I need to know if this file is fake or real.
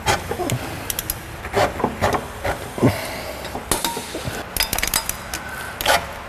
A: real